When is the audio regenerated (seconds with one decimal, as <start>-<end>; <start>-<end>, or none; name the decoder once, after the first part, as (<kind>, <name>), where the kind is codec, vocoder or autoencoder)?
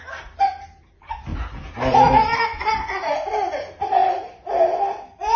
none